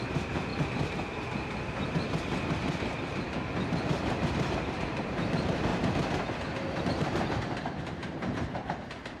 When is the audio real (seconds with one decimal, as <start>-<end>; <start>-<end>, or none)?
0.5-4.5; 5.7-6.8